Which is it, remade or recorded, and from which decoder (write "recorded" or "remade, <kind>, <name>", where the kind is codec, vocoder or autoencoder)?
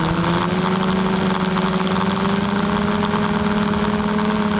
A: recorded